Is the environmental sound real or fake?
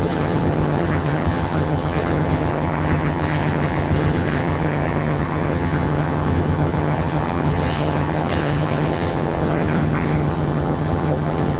fake